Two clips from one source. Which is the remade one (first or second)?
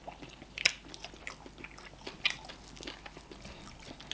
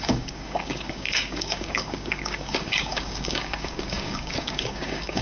second